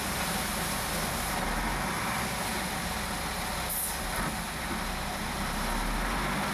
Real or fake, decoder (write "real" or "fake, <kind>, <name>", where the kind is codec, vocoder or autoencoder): real